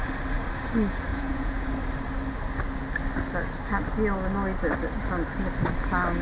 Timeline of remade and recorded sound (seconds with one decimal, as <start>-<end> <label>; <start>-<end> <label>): 0.0-1.1 recorded; 1.1-1.7 remade; 1.7-6.2 recorded